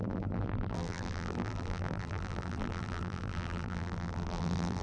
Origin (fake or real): fake